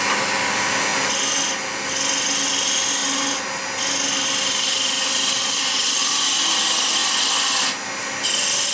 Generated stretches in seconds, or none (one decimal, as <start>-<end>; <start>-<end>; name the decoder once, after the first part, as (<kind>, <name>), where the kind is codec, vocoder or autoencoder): none